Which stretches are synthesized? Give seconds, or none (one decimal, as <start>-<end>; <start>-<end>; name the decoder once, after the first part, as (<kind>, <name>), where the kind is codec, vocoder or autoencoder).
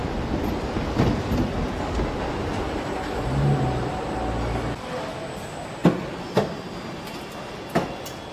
none